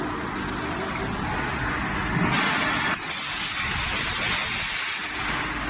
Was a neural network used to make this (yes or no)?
no